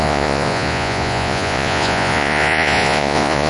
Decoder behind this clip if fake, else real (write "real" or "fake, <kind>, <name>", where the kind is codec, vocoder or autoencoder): fake, vocoder, Vocos